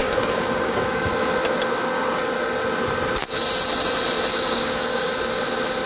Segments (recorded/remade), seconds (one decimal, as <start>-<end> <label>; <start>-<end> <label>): 0.0-1.1 remade; 1.1-4.3 recorded; 4.3-5.1 remade; 5.1-5.9 recorded